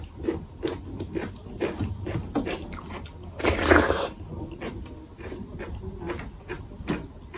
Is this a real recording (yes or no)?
yes